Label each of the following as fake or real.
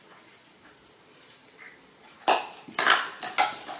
real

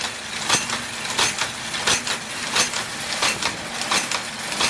real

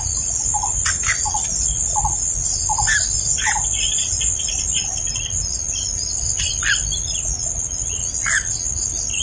real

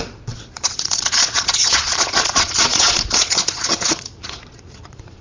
fake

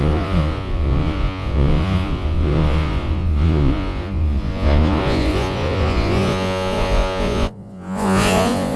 fake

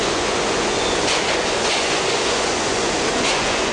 fake